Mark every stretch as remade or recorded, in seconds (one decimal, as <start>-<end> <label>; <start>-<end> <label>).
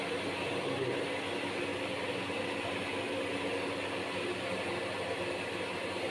0.0-1.7 recorded; 1.7-5.4 remade; 5.4-6.1 recorded